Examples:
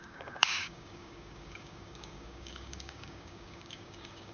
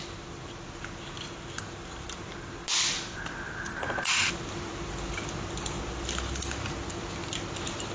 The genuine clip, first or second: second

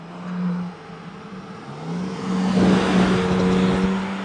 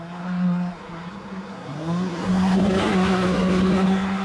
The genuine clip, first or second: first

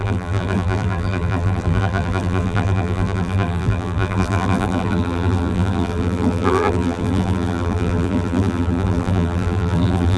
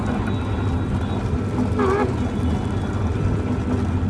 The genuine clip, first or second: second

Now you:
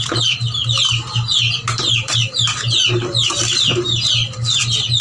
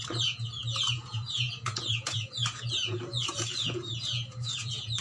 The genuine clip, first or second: first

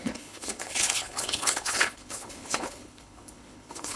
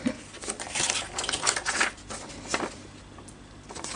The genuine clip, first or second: second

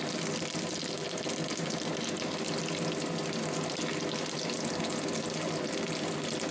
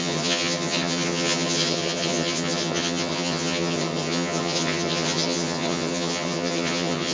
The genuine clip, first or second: first